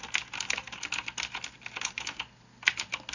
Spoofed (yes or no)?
no